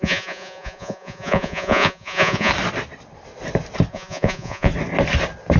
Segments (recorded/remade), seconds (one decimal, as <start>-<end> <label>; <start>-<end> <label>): 0.0-2.5 remade; 2.5-3.9 recorded; 3.9-4.7 remade; 4.7-5.6 recorded